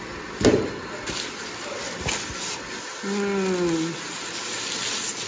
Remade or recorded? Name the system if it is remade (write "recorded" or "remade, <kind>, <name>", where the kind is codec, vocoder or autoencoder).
recorded